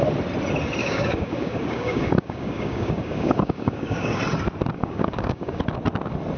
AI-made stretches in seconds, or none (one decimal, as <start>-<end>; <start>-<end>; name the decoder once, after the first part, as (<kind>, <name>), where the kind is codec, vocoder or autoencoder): 0.8-4.2 (codec, DAC); 4.8-5.6